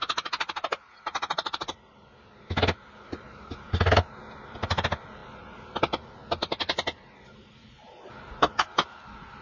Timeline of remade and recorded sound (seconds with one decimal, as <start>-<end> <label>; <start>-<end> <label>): 0.0-9.4 recorded

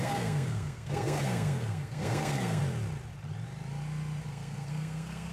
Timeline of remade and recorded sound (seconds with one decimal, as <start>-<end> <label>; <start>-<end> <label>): 0.0-2.6 remade; 2.6-4.3 recorded; 4.3-5.3 remade

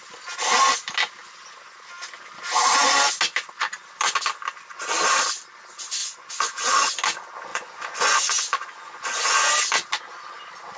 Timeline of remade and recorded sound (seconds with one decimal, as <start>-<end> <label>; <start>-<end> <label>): 0.0-6.0 recorded; 6.0-6.7 remade; 6.7-7.5 recorded; 7.5-9.5 remade; 9.5-10.8 recorded

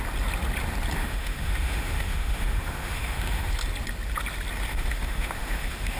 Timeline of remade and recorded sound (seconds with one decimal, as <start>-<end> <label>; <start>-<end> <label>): 0.0-1.0 recorded; 1.0-3.5 remade; 3.5-4.7 recorded; 4.7-6.0 remade

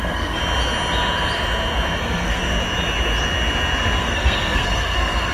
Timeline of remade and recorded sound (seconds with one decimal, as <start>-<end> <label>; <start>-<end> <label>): 0.0-0.4 remade; 0.4-2.0 recorded; 2.0-2.4 remade; 2.4-4.0 recorded; 4.0-5.3 remade